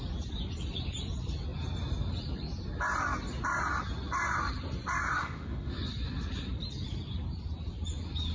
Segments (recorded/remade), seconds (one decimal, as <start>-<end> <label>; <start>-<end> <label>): 0.0-5.2 recorded; 5.2-5.7 remade; 5.7-8.3 recorded